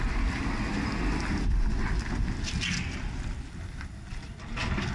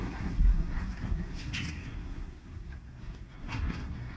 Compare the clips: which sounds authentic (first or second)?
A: first